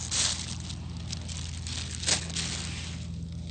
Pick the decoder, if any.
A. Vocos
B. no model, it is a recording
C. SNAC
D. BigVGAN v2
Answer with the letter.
B